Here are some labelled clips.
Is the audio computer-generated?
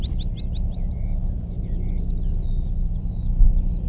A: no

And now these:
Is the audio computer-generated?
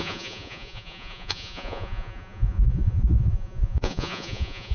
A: yes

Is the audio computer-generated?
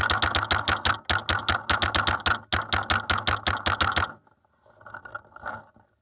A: no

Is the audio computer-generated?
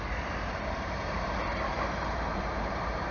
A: yes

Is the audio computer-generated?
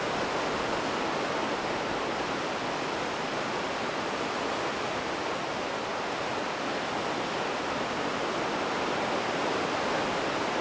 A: no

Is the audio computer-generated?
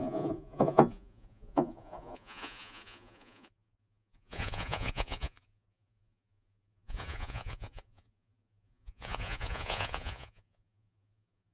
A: yes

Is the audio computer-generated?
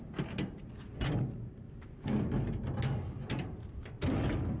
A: no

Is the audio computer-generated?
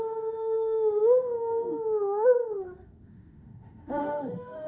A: yes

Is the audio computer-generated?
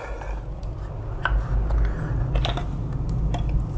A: no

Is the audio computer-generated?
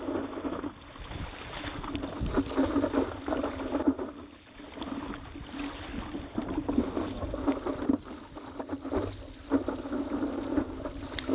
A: no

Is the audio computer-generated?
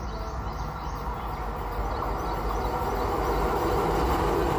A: no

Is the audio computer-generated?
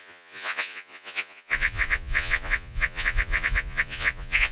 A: yes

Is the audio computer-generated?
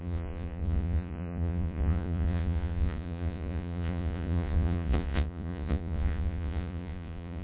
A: yes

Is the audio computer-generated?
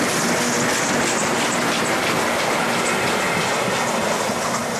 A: no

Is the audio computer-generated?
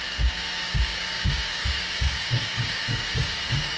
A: yes